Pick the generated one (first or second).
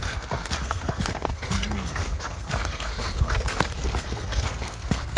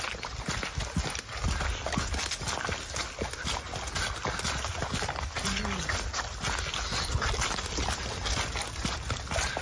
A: first